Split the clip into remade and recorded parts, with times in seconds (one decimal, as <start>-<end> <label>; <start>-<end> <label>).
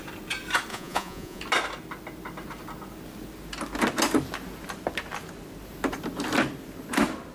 0.0-0.7 recorded; 0.7-1.4 remade; 1.4-7.3 recorded